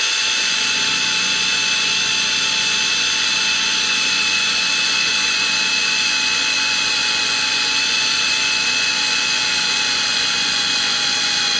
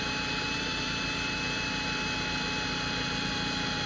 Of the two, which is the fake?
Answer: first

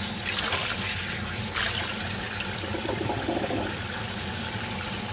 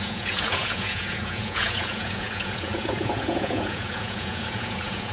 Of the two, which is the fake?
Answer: second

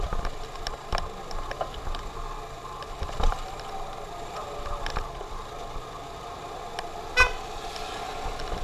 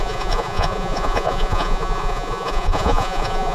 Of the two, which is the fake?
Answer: second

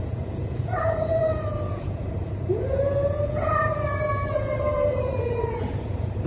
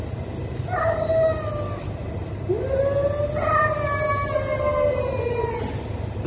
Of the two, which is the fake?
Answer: first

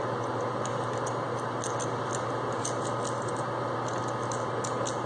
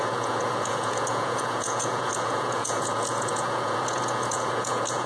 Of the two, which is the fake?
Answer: second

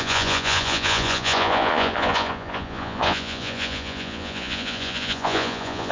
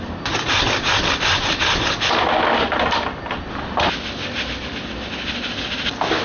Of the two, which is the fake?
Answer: first